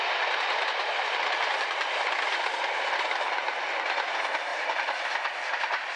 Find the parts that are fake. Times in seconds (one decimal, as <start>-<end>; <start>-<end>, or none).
none